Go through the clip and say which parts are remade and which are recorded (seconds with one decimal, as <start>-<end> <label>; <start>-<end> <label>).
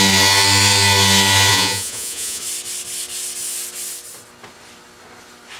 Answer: 0.0-1.5 recorded; 1.5-2.4 remade; 2.4-5.6 recorded